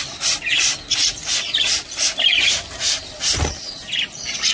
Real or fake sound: real